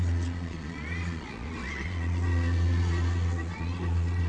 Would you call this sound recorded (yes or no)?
no